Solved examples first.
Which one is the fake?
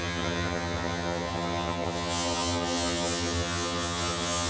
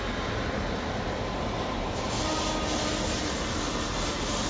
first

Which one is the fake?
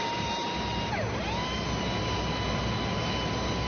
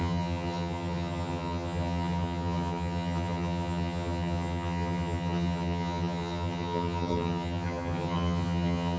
second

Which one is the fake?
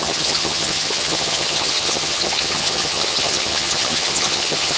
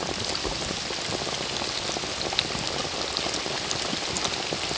first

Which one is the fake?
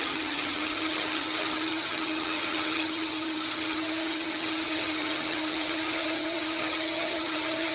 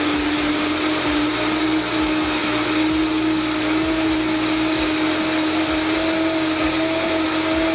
first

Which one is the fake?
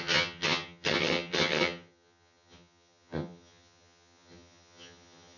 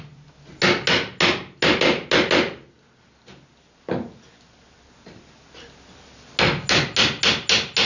first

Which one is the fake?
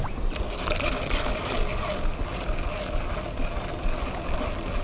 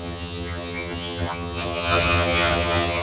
second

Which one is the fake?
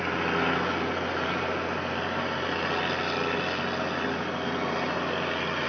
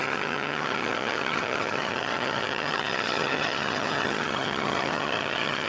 second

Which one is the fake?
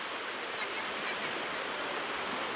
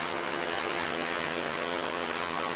second